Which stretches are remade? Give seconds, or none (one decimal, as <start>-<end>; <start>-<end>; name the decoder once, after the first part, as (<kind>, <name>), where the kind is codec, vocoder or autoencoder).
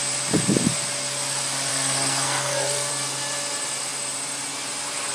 1.7-2.9 (codec, SNAC)